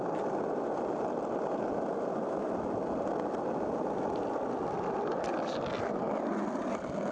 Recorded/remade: recorded